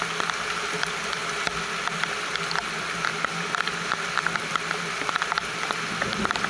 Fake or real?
real